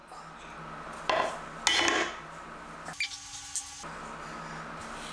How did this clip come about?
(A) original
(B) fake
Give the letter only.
A